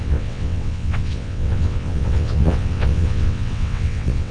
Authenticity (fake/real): fake